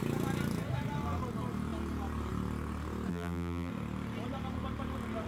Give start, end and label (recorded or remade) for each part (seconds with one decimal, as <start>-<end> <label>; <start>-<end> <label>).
0.0-3.1 recorded; 3.1-3.7 remade; 3.7-5.3 recorded